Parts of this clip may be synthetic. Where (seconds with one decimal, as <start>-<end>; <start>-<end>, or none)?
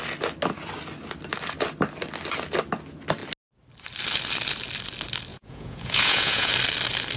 5.3-6.5